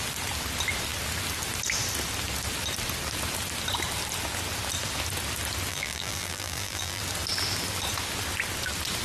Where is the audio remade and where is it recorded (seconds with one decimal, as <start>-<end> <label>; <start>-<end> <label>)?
0.0-5.7 recorded; 5.7-7.0 remade; 7.0-9.0 recorded